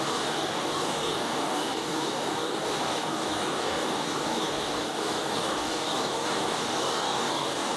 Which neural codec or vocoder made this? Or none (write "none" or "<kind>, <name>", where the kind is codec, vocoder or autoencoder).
codec, DAC